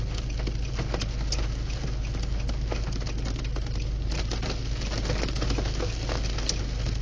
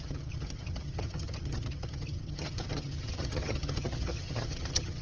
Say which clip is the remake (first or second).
second